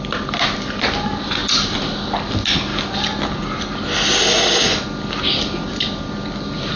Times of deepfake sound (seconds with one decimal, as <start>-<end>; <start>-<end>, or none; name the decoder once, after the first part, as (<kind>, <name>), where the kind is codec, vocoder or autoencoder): none